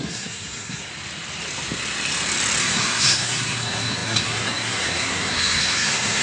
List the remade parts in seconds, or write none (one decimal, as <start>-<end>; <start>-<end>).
0.0-0.9; 2.6-6.2

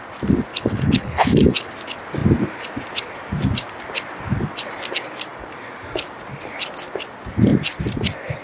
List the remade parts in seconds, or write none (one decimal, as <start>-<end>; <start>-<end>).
0.5-1.7

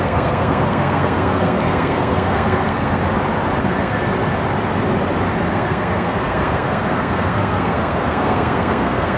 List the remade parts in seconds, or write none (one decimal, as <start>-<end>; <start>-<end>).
0.0-3.0; 3.6-4.0; 5.5-9.2

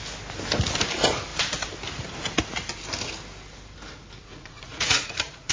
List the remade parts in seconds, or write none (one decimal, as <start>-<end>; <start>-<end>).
4.3-5.5

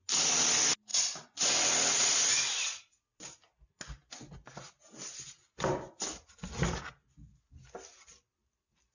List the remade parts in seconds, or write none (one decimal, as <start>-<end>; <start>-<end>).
none

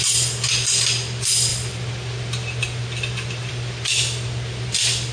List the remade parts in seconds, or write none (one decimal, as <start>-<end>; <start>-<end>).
none

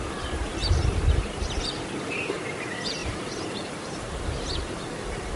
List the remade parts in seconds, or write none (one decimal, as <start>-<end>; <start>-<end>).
0.6-2.0; 3.0-4.8